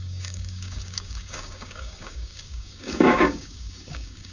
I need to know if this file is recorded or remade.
remade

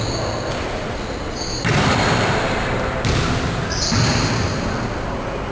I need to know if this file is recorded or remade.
recorded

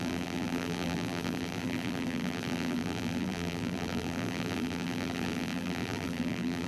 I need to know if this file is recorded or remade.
remade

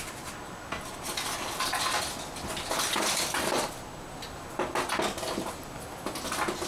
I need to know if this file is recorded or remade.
recorded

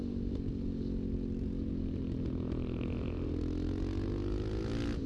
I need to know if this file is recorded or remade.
recorded